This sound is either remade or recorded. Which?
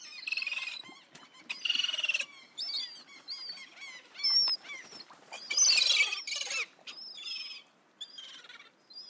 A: recorded